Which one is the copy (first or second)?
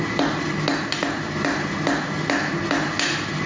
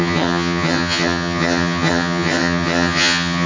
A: second